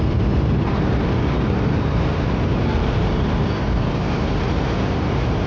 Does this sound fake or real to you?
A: fake